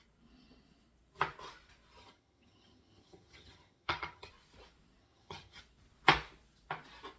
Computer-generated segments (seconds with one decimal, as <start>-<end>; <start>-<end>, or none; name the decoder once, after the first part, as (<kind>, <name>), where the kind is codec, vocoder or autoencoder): 2.0-4.3 (vocoder, HiFi-GAN); 5.0-5.6